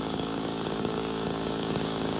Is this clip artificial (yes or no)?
yes